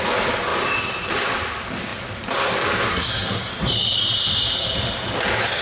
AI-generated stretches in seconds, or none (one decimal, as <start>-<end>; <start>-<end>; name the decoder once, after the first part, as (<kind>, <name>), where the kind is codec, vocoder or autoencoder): 2.9-3.5 (codec, SNAC)

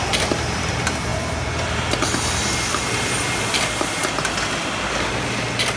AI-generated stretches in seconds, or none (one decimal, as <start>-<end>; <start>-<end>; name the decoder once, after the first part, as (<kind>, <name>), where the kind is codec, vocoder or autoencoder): none

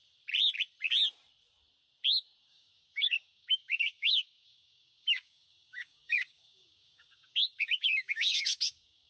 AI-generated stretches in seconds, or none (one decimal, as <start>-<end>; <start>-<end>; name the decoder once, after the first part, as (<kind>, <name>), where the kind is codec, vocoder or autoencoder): 2.4-9.1 (codec, DAC)

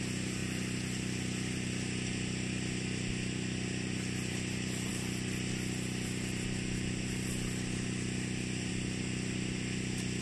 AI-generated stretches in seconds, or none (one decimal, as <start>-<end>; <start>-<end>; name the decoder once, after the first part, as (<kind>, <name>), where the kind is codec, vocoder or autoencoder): none